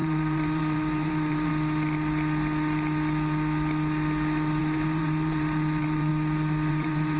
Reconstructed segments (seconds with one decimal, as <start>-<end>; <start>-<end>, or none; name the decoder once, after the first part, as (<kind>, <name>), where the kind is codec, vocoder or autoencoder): 0.0-1.5 (vocoder, BigVGAN v2); 4.6-6.1; 6.7-7.2